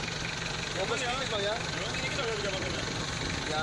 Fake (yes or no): no